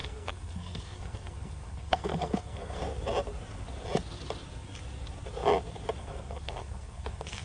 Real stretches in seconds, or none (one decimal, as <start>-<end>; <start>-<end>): 2.8-6.0